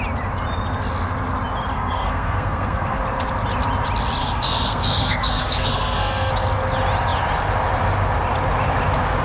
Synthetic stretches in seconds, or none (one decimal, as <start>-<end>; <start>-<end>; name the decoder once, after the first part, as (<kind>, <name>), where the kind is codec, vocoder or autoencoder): 1.7-3.0 (codec, SNAC); 4.2-6.3